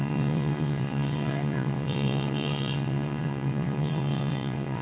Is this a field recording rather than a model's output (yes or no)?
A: no